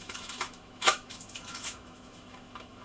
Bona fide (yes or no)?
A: no